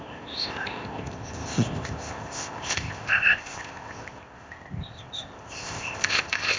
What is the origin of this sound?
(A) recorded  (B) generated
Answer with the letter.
B